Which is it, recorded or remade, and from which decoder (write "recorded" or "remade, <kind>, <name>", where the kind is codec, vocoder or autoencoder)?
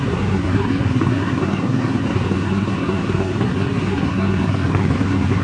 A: remade, codec, SNAC